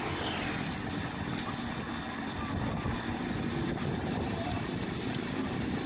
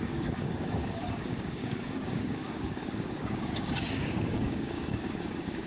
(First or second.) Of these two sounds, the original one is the first